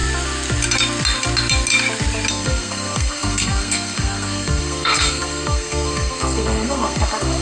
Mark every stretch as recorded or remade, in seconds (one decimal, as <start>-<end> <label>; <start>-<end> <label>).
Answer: 0.0-2.3 recorded; 2.3-7.4 remade